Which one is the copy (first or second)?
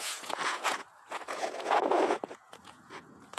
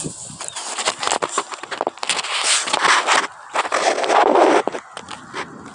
first